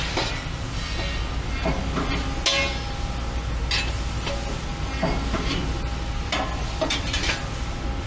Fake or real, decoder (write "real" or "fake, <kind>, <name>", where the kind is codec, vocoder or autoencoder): real